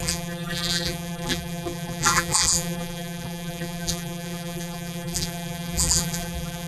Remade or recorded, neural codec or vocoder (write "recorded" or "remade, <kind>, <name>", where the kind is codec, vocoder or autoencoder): remade, vocoder, BigVGAN v2